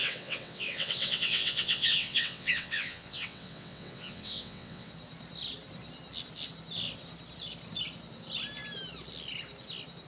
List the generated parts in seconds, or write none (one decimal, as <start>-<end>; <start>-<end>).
0.0-4.9